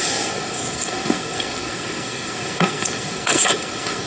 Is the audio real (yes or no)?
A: no